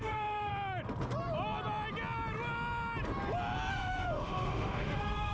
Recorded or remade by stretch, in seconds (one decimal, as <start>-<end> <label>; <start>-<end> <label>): 0.0-0.5 remade; 0.5-3.7 recorded; 3.7-5.3 remade